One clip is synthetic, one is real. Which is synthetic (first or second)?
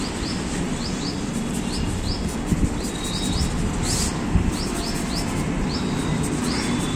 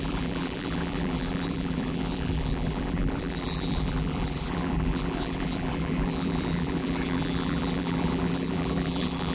second